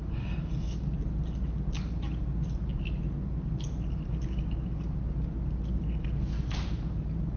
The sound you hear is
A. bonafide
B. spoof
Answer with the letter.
A